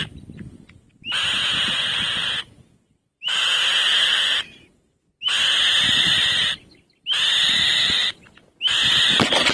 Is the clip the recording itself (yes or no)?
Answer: yes